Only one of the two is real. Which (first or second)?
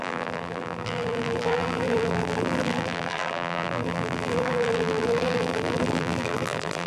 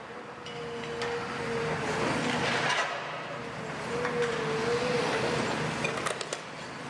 second